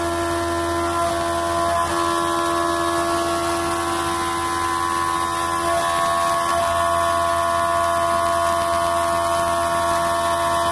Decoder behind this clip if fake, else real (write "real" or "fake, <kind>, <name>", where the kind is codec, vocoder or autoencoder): real